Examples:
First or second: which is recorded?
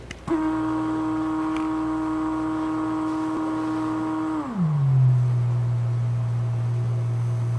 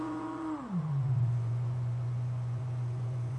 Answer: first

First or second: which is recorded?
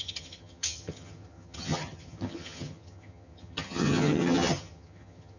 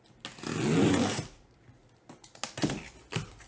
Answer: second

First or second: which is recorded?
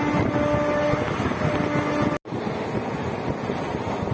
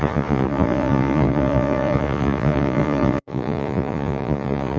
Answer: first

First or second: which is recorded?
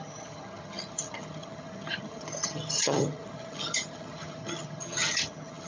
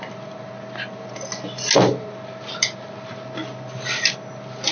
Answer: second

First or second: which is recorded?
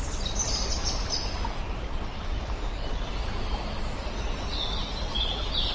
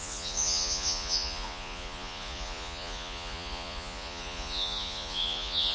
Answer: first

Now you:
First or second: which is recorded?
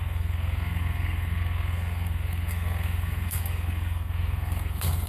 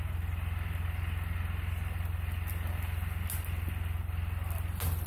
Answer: second